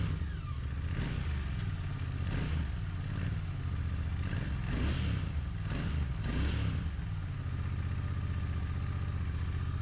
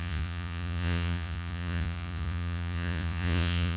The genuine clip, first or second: first